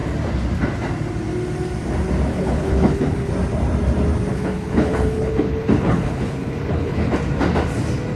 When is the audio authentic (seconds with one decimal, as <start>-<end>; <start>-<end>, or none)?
0.0-2.3; 3.3-4.3; 7.1-8.2